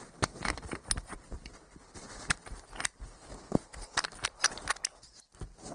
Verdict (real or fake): real